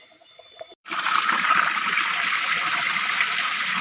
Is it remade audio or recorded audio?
remade